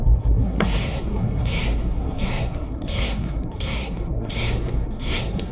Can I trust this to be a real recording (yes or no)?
no